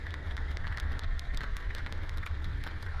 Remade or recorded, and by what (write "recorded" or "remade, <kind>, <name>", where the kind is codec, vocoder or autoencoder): remade, codec, SNAC